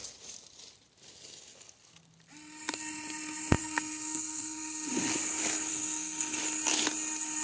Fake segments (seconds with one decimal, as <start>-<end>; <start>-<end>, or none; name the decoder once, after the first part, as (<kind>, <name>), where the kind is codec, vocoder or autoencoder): 3.6-4.9 (codec, SNAC); 5.7-6.4

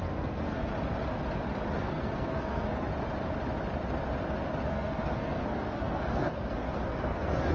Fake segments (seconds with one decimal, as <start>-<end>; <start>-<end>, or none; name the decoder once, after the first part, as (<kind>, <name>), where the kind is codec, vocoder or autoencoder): 0.0-0.7 (codec, SNAC); 1.8-2.9; 4.7-7.5

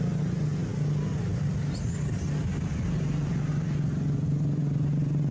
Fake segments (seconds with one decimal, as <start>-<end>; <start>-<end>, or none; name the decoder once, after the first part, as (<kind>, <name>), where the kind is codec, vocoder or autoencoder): none